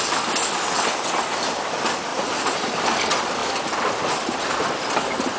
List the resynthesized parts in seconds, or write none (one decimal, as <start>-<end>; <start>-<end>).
2.1-2.7